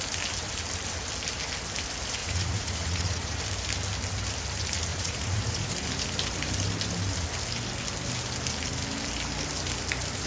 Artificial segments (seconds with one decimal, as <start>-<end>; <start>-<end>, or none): 2.2-3.4; 4.9-5.7